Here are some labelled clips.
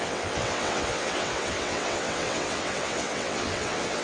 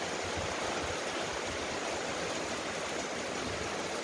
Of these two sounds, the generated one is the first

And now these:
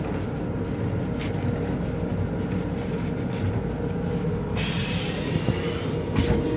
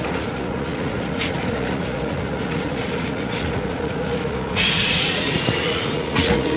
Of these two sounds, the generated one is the second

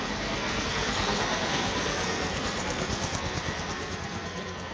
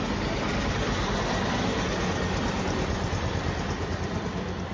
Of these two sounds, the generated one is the first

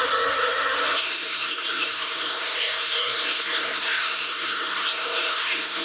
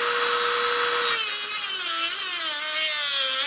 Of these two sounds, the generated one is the first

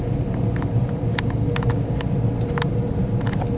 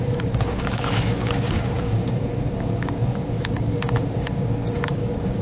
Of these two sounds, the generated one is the second